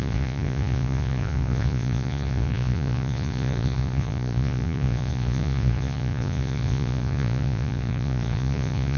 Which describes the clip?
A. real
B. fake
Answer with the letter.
B